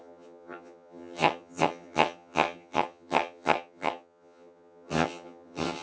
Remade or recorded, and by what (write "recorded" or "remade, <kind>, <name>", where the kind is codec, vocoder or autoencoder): remade, vocoder, HiFi-GAN